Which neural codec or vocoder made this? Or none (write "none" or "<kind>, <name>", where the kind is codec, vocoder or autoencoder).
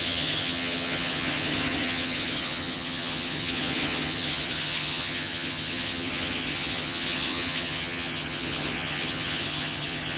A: vocoder, HiFi-GAN